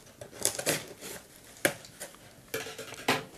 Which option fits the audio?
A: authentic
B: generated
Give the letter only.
A